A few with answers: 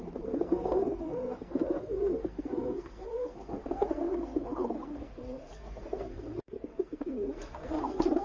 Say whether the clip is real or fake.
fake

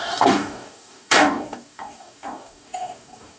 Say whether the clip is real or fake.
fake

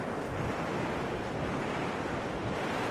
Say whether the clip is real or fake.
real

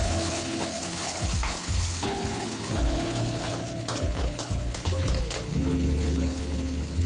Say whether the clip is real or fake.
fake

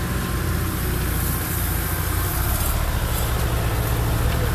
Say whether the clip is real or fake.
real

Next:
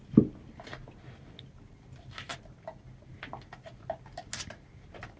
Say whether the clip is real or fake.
real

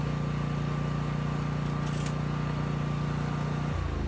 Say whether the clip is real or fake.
real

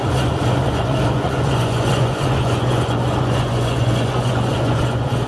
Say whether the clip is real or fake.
fake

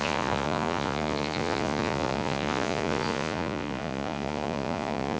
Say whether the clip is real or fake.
fake